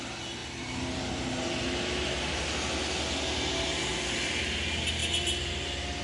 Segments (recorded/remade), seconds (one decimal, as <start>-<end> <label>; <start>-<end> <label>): 0.0-6.0 recorded